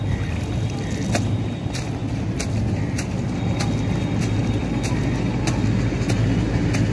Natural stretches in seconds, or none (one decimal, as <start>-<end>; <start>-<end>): 0.0-6.9